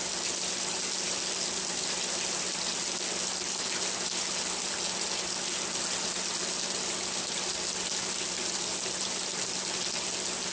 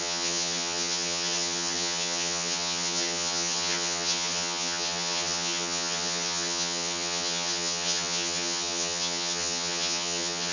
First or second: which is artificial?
second